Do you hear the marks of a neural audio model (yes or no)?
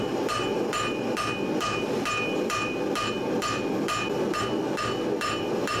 yes